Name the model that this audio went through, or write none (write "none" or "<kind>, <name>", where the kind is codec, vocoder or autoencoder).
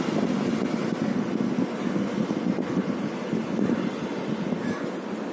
none